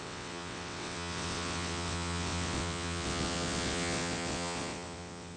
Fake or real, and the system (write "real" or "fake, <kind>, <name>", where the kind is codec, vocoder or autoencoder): fake, vocoder, WaveNeXt